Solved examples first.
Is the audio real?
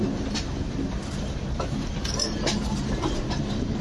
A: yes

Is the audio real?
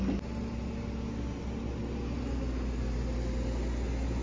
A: yes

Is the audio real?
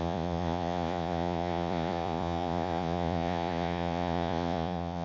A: no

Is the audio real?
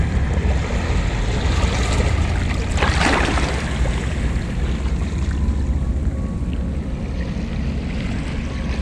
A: yes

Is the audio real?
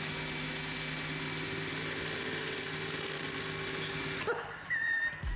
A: yes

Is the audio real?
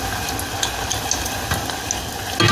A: yes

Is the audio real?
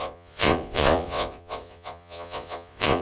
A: no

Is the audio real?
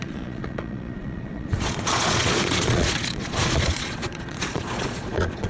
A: no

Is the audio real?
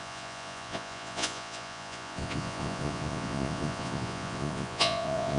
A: no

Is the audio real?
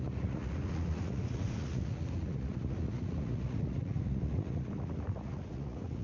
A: no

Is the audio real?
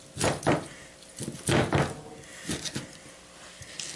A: yes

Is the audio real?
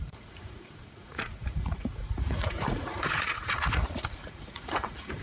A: no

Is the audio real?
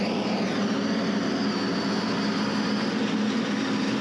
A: yes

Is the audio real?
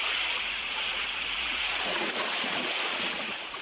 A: no